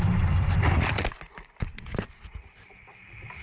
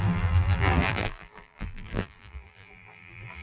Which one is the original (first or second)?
first